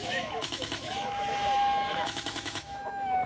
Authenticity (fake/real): fake